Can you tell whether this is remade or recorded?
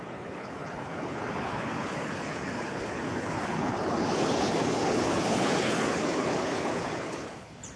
remade